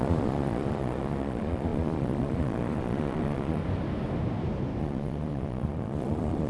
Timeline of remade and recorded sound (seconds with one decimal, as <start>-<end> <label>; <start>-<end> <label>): 0.0-3.6 remade; 3.6-4.8 recorded; 4.8-6.5 remade